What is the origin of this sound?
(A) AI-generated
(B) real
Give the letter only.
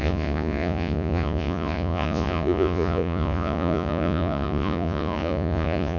A